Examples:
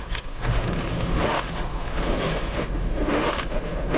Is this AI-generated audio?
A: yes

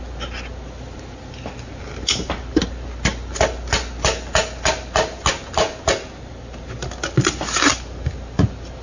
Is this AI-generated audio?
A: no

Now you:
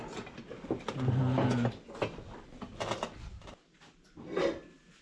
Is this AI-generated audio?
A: no